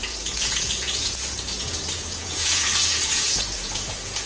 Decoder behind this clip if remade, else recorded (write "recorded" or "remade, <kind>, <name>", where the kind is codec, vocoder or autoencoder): remade, vocoder, Vocos